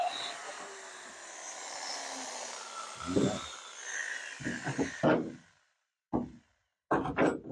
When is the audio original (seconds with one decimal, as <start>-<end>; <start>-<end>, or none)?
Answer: 0.0-4.5; 5.0-7.5